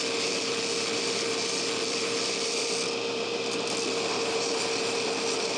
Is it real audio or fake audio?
fake